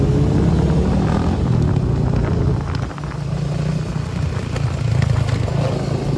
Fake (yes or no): no